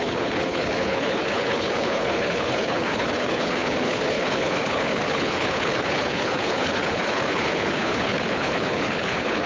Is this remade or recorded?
remade